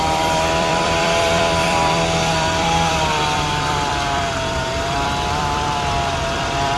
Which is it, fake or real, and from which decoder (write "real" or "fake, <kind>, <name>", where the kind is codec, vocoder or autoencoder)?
fake, vocoder, BigVGAN v2